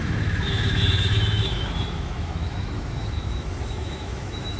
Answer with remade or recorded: remade